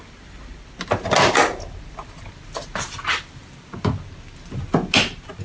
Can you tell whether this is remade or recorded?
recorded